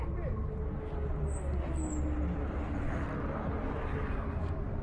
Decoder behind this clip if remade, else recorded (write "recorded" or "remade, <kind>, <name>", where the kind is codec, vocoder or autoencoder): recorded